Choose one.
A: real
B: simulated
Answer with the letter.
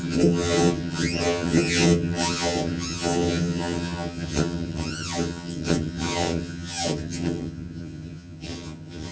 B